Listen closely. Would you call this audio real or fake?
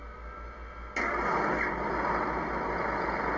real